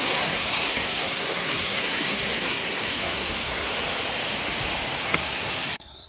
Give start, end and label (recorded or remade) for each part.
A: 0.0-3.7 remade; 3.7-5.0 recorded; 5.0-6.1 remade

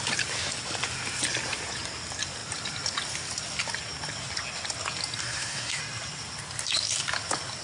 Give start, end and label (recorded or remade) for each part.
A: 0.0-5.2 recorded; 5.2-5.8 remade; 5.8-7.6 recorded